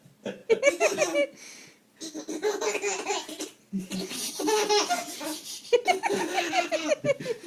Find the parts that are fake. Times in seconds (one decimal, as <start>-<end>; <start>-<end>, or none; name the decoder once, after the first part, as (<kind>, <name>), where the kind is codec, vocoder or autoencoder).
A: none